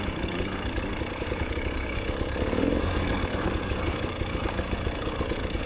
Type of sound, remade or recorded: remade